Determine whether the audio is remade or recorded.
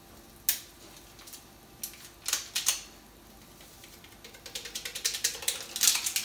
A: recorded